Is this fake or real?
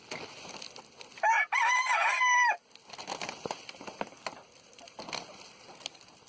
real